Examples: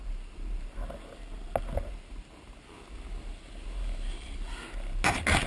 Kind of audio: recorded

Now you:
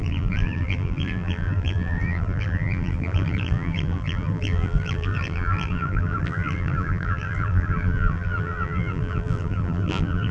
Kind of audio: remade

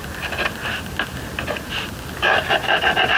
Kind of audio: recorded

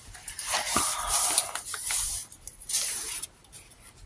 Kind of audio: remade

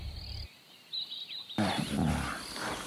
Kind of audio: remade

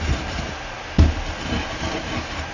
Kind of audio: remade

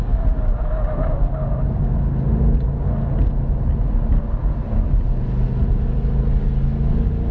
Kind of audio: recorded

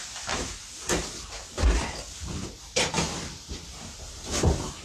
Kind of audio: recorded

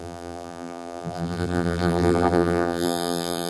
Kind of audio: remade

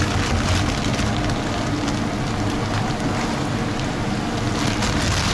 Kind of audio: recorded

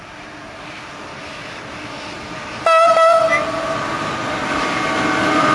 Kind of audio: recorded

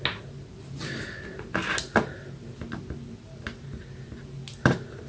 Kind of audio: recorded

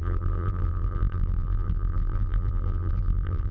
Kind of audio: remade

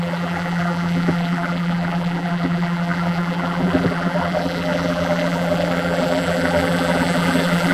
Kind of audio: remade